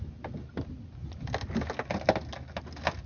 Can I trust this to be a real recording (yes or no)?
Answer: yes